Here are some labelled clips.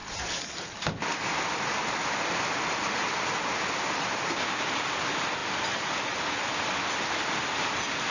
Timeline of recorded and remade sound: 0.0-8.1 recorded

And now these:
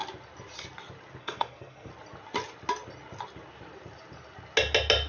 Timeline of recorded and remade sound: 0.0-1.2 recorded; 1.2-1.9 remade; 1.9-5.1 recorded

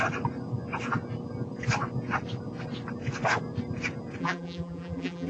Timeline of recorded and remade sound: 0.0-4.2 recorded; 4.2-5.3 remade

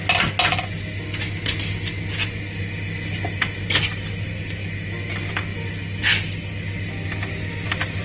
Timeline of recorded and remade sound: 0.0-8.0 recorded

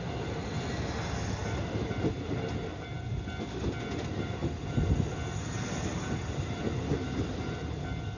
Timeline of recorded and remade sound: 0.0-8.2 recorded

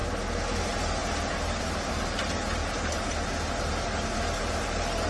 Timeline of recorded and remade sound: 0.0-5.1 recorded